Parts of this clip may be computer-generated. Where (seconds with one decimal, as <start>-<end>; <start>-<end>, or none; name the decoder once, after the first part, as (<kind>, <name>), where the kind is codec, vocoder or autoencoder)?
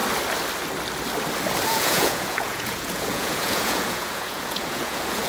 1.7-5.3 (vocoder, Vocos)